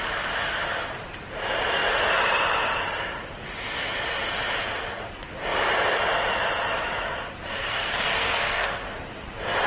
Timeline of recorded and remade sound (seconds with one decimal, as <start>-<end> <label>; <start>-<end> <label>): 0.0-7.6 recorded; 7.6-8.8 remade; 8.8-9.7 recorded

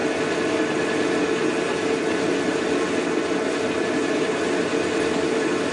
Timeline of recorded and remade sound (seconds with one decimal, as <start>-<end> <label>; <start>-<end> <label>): 0.0-5.7 recorded

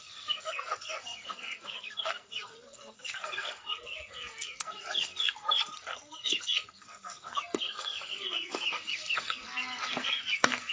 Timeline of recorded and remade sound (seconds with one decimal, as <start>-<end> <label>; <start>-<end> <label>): 0.0-10.7 remade

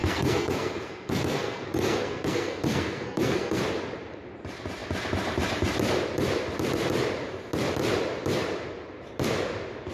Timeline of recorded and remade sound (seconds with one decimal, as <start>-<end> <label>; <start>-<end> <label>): 0.0-3.6 remade; 3.6-9.9 recorded

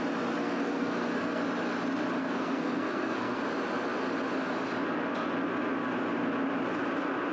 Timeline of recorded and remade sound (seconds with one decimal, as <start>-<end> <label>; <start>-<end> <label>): 0.0-0.4 recorded; 0.4-1.4 remade; 1.4-2.2 recorded; 2.2-3.4 remade; 3.4-7.3 recorded

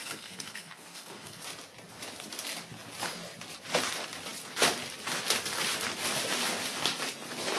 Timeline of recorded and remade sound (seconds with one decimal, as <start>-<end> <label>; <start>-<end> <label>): 0.0-1.4 remade; 1.4-7.6 recorded